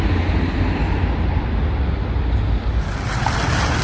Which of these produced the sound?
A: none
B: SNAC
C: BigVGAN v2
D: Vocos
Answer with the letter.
A